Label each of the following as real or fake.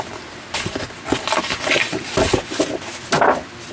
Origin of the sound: real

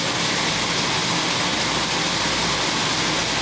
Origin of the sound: real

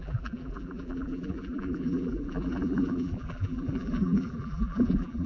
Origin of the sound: fake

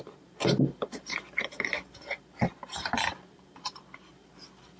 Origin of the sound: fake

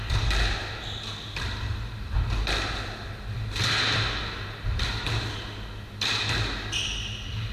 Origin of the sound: real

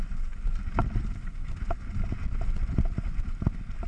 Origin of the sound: real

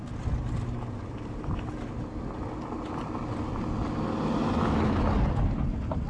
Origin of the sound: real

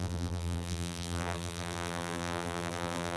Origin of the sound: fake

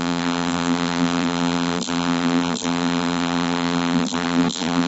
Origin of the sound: fake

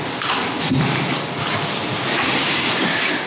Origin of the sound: real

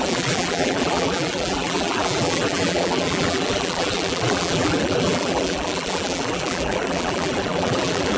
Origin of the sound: fake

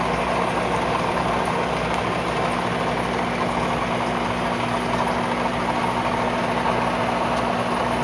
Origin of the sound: real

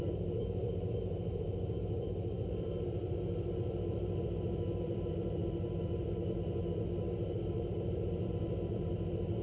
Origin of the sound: fake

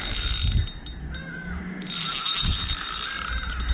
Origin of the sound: real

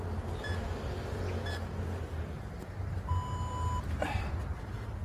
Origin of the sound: real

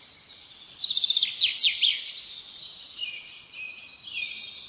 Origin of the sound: real